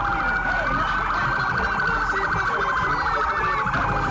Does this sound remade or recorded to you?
recorded